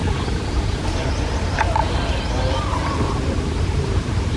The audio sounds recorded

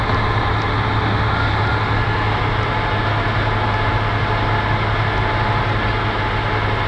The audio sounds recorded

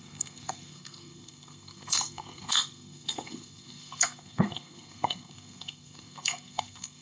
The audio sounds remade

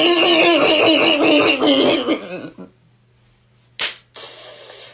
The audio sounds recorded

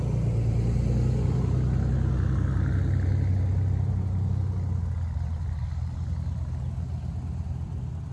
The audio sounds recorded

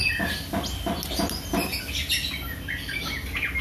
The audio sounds recorded